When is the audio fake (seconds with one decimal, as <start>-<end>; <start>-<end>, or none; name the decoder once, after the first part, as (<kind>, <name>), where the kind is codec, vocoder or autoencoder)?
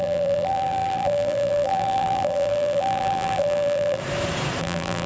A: 0.0-4.0 (vocoder, BigVGAN v2); 4.6-5.1